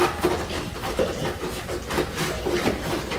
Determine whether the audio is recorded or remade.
recorded